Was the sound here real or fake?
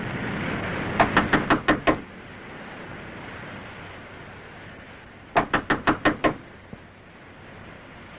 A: real